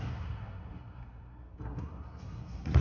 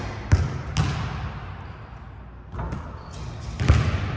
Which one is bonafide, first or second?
second